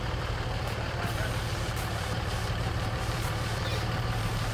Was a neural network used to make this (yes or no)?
yes